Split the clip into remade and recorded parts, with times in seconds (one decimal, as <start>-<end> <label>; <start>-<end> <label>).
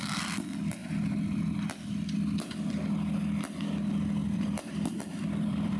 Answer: 0.0-4.2 recorded; 4.2-5.8 remade